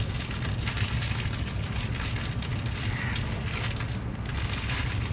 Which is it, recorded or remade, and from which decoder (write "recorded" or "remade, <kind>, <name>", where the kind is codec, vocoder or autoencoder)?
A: recorded